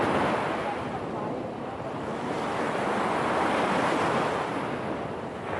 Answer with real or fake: real